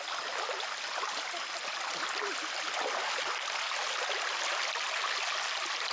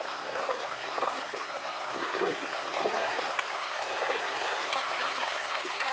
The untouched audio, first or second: first